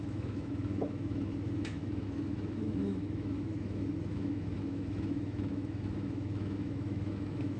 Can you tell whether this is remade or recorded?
remade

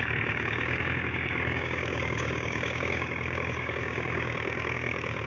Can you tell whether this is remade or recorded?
remade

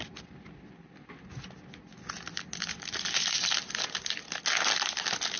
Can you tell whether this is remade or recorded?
recorded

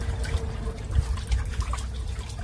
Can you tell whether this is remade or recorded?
recorded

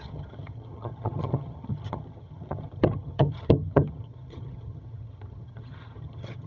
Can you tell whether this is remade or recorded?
remade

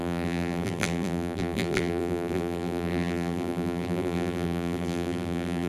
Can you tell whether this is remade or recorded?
remade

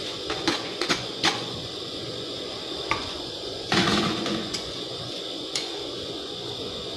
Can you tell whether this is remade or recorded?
remade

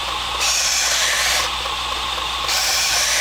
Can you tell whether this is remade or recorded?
remade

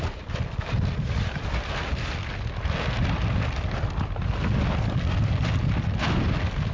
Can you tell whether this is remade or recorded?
recorded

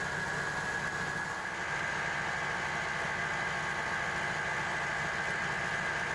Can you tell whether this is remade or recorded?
recorded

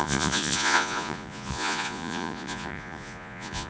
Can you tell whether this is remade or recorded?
remade